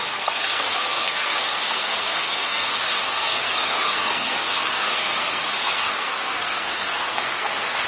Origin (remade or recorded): remade